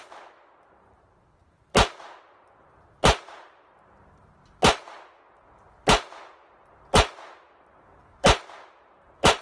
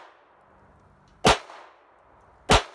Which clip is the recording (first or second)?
second